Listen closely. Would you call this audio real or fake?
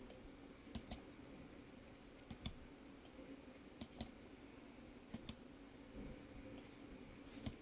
real